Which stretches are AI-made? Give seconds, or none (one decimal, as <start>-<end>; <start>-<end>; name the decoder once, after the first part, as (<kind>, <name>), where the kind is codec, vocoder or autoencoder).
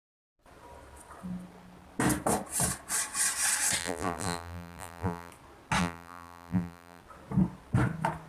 3.8-5.3 (vocoder, BigVGAN v2); 5.8-7.0